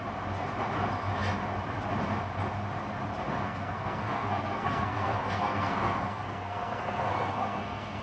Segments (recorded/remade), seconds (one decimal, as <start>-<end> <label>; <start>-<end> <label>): 0.0-3.4 recorded; 3.4-8.0 remade